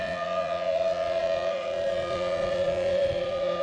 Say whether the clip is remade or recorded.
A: remade